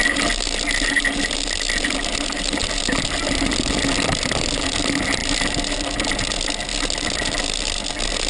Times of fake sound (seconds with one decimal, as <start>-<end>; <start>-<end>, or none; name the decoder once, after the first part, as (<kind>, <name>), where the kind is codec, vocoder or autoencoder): none